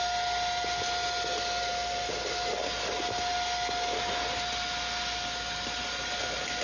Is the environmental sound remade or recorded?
recorded